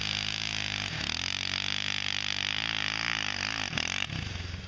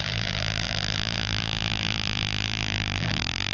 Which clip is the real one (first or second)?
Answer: first